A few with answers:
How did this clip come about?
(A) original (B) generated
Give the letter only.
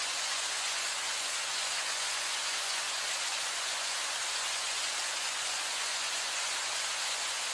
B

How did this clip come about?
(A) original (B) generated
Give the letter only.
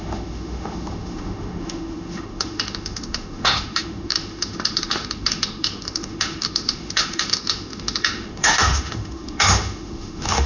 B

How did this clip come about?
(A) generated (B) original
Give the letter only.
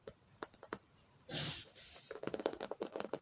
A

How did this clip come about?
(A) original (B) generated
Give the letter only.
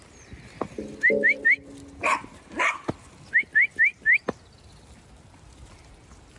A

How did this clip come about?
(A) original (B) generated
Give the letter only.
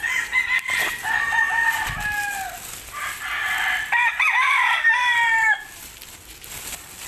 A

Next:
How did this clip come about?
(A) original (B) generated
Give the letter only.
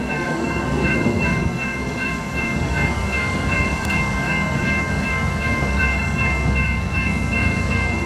B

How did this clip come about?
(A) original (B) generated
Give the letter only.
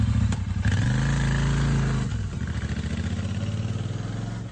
A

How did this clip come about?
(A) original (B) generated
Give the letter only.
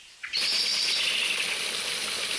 A